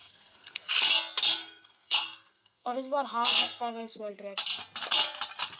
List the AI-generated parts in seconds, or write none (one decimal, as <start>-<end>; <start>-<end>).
0.0-0.7; 1.4-4.1